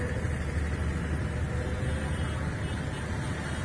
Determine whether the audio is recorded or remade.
recorded